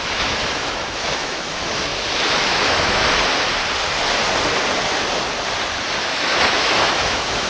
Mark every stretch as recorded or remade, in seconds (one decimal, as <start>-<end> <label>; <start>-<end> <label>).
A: 0.0-3.0 remade; 3.0-6.0 recorded; 6.0-7.5 remade